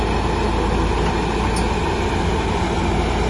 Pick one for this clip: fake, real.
real